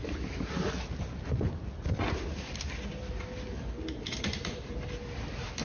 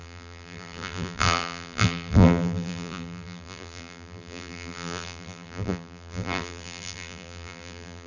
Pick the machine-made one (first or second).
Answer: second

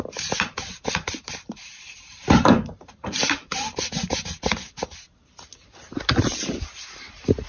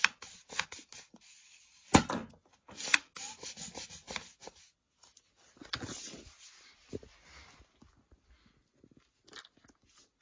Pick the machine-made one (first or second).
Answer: first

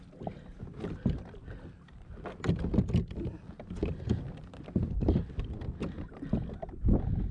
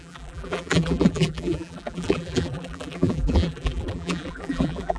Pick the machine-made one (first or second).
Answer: second